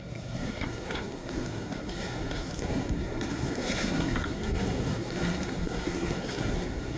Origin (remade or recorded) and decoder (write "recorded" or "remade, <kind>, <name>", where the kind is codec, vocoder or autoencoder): remade, codec, SNAC